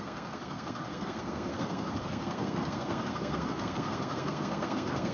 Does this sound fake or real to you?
fake